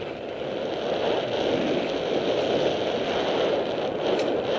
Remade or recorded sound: recorded